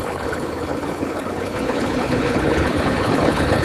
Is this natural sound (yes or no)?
no